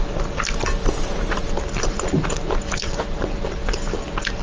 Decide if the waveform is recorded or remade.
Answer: recorded